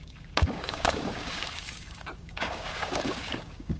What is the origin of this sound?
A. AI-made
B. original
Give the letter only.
A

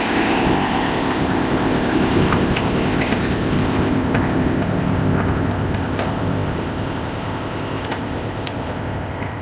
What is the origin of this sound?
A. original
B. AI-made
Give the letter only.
B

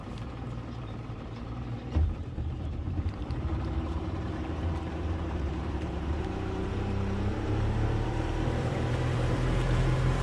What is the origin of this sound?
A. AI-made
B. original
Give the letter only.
A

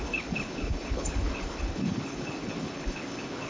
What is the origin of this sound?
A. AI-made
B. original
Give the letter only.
A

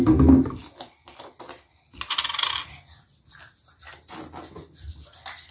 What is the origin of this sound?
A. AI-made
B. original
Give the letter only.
B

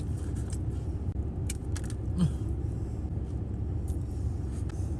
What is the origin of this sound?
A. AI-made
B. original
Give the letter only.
B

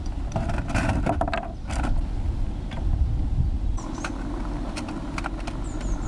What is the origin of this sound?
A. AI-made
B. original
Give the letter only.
B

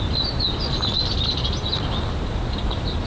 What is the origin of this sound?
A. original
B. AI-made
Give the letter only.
A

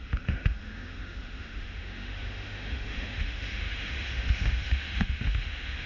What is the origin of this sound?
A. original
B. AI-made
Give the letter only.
B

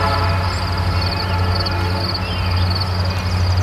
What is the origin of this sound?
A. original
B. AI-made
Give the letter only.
A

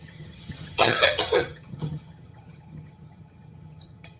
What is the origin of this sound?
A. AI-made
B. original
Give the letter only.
A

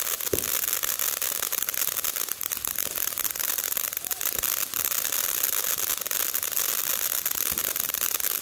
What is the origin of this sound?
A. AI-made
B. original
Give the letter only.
B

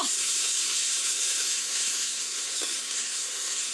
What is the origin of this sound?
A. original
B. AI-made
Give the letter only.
B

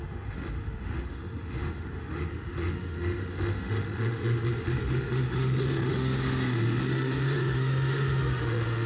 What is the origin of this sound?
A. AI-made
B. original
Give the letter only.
A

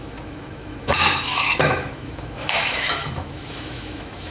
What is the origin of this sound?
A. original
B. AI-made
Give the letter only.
B